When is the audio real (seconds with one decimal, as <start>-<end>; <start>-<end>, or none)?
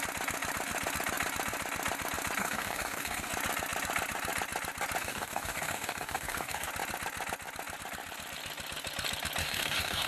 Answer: 0.0-2.4; 3.3-5.0; 6.7-9.4